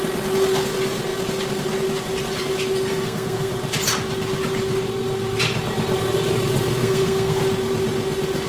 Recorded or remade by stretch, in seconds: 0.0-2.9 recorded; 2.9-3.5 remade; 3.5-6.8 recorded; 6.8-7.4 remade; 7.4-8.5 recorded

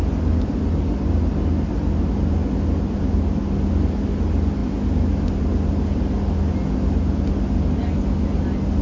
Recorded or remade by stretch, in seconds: 0.0-8.8 recorded

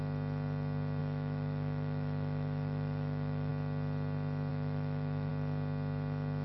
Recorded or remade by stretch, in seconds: 0.0-1.0 recorded; 1.0-3.5 remade; 3.5-4.5 recorded; 4.5-5.3 remade; 5.3-6.4 recorded

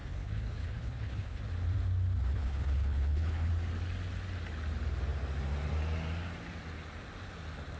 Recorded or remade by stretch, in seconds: 0.0-1.4 remade; 1.4-2.3 recorded; 2.3-3.5 remade; 3.5-7.8 recorded